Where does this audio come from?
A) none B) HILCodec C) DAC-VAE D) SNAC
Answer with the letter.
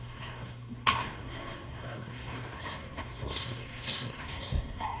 D